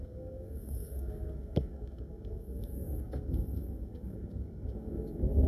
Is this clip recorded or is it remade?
remade